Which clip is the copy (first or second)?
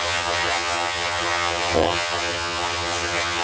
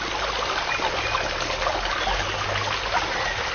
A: first